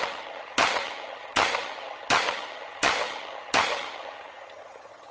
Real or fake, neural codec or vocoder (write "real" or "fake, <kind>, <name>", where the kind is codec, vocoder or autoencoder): fake, vocoder, HiFi-GAN